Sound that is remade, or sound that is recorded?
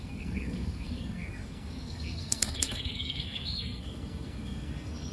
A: remade